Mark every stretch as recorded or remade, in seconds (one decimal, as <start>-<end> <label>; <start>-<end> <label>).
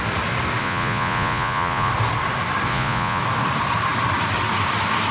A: 0.0-0.6 recorded; 0.6-1.9 remade; 1.9-2.7 recorded; 2.7-3.2 remade; 3.2-5.1 recorded